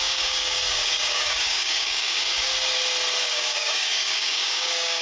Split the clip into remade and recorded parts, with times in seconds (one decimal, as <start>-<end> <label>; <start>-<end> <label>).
0.0-2.5 remade; 2.5-3.2 recorded; 3.2-5.0 remade